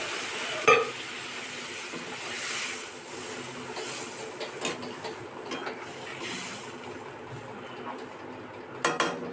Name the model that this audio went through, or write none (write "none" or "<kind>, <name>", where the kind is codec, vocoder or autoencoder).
none